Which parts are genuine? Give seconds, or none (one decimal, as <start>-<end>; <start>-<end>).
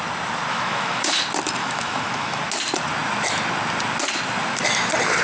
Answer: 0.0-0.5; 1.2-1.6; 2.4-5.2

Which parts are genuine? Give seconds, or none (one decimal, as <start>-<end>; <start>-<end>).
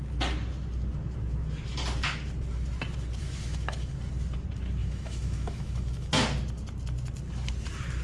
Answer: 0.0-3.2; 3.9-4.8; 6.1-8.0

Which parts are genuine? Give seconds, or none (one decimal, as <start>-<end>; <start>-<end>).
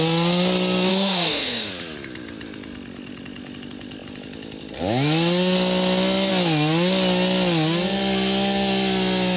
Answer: 0.0-0.9; 1.7-9.4